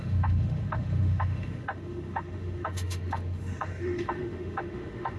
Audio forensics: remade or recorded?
remade